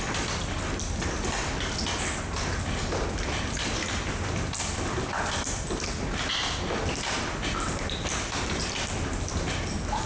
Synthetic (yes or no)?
no